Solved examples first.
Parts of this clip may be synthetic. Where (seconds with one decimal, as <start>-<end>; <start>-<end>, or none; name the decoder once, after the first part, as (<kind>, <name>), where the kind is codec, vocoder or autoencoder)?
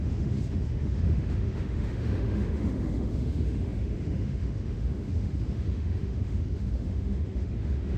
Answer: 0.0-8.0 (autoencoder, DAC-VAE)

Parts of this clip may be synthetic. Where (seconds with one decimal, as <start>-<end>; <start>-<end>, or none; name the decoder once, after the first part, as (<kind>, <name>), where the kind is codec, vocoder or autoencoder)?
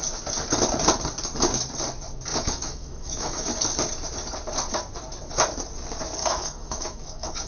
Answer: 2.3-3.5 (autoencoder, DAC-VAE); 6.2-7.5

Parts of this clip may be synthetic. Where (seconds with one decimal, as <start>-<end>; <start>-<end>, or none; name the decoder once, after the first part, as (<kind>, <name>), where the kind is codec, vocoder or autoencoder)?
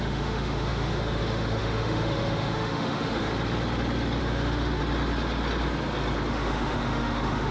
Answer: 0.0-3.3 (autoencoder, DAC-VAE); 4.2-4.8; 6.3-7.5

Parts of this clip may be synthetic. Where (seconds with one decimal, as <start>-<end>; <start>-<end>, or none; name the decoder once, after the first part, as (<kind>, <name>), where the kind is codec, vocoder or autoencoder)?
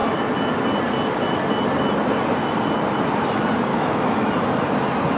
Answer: 3.7-4.3 (autoencoder, DAC-VAE)